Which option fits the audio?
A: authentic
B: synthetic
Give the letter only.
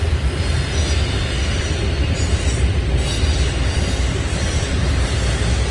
A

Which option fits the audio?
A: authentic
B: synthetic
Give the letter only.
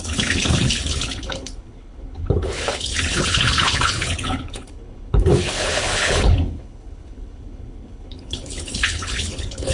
B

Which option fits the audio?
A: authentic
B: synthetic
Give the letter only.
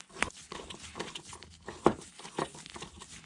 A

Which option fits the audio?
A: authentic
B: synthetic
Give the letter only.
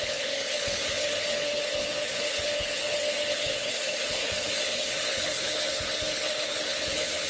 B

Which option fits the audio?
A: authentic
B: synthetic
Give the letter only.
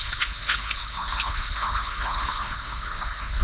B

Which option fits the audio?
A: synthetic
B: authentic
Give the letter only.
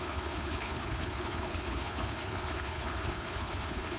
A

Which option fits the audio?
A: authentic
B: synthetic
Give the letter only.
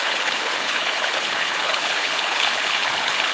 B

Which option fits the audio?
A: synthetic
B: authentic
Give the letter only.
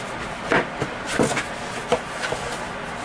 B